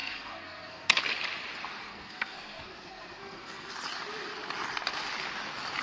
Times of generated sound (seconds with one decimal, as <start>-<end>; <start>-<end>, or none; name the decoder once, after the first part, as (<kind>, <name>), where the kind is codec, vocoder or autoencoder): 0.0-1.0 (codec, SNAC); 1.9-3.7